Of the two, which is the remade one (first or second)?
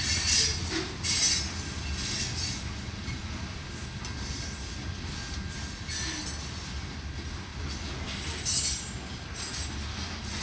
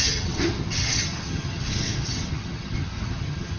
second